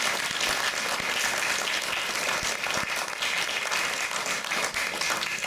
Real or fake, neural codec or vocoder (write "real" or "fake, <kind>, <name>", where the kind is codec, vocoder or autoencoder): real